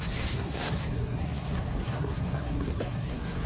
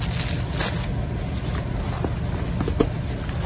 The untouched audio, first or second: second